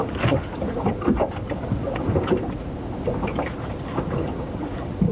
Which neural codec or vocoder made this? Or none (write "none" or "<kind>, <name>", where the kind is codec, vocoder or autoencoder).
none